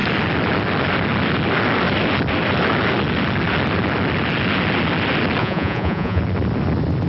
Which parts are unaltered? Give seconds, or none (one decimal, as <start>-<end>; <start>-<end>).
0.0-5.4; 6.2-7.1